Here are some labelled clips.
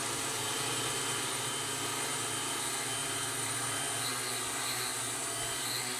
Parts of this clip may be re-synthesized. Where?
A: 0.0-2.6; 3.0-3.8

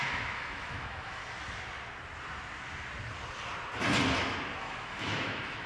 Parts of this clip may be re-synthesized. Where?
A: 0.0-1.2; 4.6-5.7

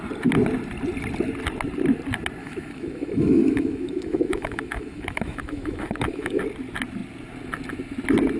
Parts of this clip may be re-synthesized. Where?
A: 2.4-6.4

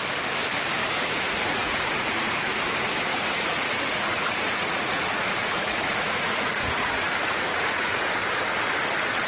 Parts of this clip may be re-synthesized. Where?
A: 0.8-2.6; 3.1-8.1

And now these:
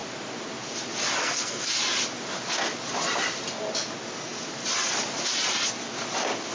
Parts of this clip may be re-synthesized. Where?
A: 1.2-1.7

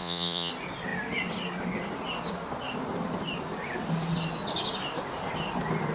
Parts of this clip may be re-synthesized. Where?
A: 0.0-0.5

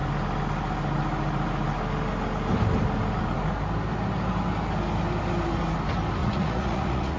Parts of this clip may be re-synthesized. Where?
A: 6.2-7.2